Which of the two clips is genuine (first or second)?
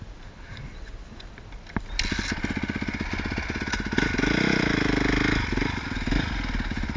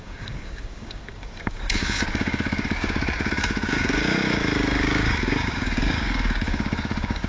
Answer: first